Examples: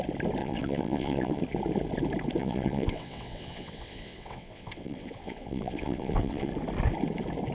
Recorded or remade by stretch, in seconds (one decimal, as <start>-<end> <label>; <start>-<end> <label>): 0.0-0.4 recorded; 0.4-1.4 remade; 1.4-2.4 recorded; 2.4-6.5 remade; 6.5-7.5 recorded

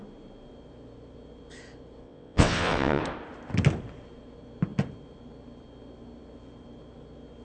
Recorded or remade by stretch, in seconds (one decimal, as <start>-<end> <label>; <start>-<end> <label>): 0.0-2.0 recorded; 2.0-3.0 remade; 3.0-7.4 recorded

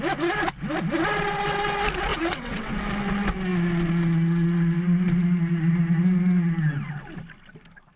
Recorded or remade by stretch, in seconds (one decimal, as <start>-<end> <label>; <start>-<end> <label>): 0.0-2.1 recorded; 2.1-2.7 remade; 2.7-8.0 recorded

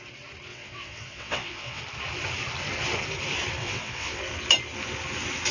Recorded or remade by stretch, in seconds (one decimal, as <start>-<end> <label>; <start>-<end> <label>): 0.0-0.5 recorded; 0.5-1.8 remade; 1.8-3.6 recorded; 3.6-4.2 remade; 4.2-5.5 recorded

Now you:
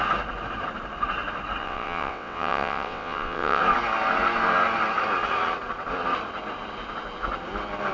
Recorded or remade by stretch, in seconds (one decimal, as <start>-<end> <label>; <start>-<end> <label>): 0.0-1.6 recorded; 1.6-3.6 remade; 3.6-7.9 recorded

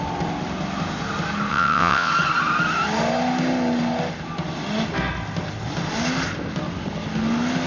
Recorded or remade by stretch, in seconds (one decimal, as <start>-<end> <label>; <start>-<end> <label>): 0.0-1.5 recorded; 1.5-2.1 remade; 2.1-7.7 recorded

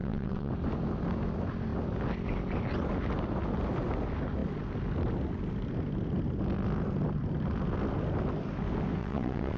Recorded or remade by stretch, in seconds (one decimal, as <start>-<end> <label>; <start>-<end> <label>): 0.0-0.5 remade; 0.5-9.0 recorded; 9.0-9.6 remade

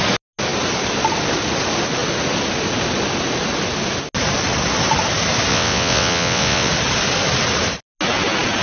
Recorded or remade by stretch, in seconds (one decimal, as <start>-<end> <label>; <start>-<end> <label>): 0.0-5.5 recorded; 5.5-6.7 remade; 6.7-8.6 recorded